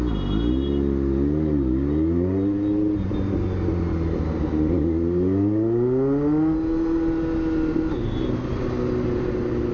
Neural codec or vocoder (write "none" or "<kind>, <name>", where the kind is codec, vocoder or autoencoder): none